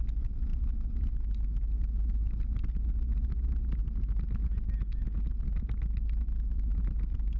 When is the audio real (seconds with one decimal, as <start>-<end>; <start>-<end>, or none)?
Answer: 0.0-7.4